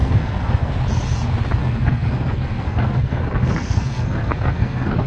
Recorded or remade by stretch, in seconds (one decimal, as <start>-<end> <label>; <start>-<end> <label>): 0.0-0.7 remade; 0.7-1.6 recorded; 1.6-5.1 remade

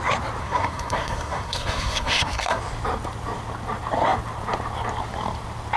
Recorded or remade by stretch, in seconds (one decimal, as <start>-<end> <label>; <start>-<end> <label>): 0.0-0.4 recorded; 0.4-2.6 remade; 2.6-5.8 recorded

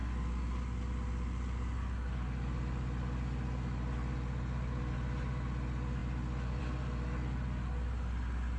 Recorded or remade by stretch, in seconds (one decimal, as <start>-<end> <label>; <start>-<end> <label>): 0.0-8.6 recorded

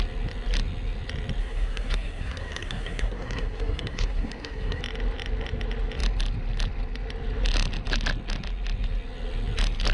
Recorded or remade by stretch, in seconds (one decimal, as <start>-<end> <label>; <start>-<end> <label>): 0.0-1.4 recorded; 1.4-4.8 remade; 4.8-9.9 recorded

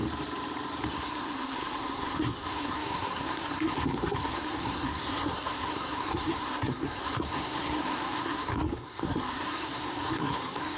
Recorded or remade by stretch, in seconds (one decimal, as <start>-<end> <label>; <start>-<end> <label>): 0.0-0.9 recorded; 0.9-10.8 remade

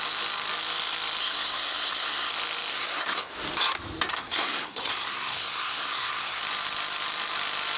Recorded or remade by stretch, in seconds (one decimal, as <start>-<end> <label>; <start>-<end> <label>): 0.0-1.2 recorded; 1.2-2.3 remade; 2.3-2.7 recorded; 2.7-3.3 remade; 3.3-4.1 recorded; 4.1-6.4 remade; 6.4-7.8 recorded

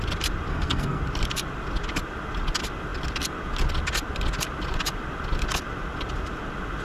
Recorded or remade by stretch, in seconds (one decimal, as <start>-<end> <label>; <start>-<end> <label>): 0.0-0.5 recorded; 0.5-1.0 remade; 1.0-6.8 recorded